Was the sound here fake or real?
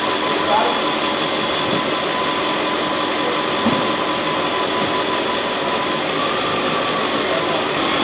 real